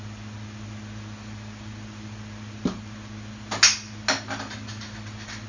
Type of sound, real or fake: real